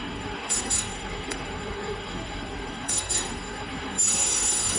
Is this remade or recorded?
remade